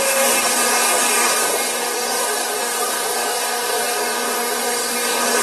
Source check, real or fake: fake